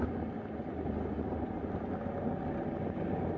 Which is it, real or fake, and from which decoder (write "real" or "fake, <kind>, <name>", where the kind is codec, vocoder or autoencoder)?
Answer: real